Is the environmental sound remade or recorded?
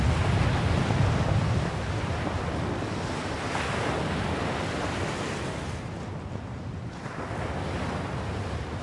recorded